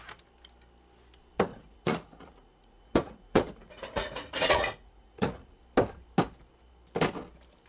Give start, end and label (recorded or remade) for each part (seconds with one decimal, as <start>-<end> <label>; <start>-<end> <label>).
0.0-1.5 recorded; 1.5-5.6 remade; 5.6-7.7 recorded